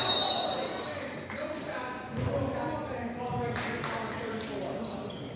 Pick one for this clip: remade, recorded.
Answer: recorded